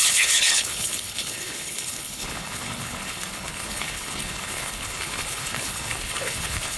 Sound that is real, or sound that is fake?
fake